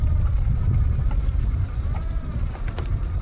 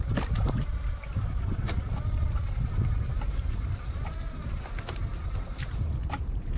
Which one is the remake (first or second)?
second